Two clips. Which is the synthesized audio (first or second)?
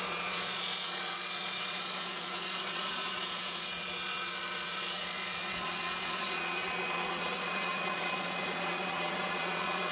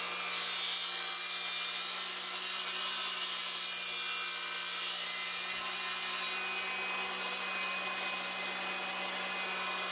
first